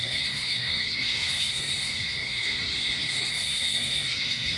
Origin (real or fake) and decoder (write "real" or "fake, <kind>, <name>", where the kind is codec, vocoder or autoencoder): fake, codec, SNAC